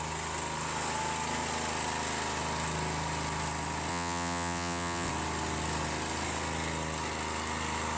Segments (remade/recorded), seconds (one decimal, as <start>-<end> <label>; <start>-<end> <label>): 0.0-3.9 recorded; 3.9-5.1 remade; 5.1-8.0 recorded